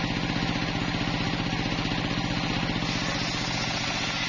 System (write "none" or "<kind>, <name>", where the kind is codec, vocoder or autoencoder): none